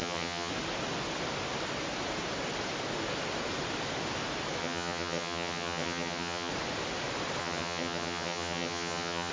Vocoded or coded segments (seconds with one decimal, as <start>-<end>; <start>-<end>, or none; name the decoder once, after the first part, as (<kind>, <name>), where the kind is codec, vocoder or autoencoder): 0.0-0.5 (vocoder, HiFi-GAN); 4.6-6.5; 7.4-9.3